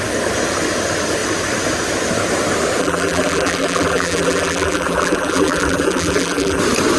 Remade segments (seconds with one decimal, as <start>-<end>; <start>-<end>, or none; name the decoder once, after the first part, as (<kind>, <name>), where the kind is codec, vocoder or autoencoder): 2.8-6.6 (vocoder, BigVGAN v2)